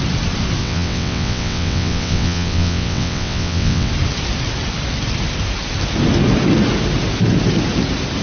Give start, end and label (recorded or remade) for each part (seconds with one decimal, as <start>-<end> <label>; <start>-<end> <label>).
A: 0.0-0.6 recorded; 0.6-3.9 remade; 3.9-8.2 recorded